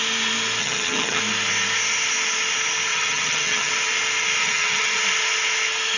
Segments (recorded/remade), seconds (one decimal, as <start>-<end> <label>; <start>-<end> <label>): 0.0-0.6 recorded; 0.6-1.2 remade; 1.2-2.9 recorded; 2.9-3.7 remade; 3.7-4.4 recorded; 4.4-5.0 remade; 5.0-6.0 recorded